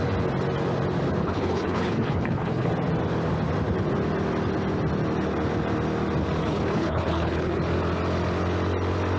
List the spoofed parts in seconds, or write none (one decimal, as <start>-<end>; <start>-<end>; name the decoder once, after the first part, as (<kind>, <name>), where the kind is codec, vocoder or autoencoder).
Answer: 1.2-2.7 (codec, HILCodec); 6.4-7.6